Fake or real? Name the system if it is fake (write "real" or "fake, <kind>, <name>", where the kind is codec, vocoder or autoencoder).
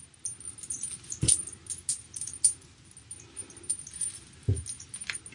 real